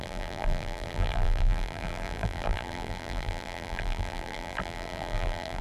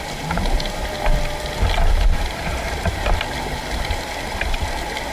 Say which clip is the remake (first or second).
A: first